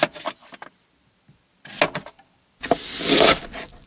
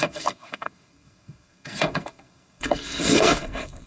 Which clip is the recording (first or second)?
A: first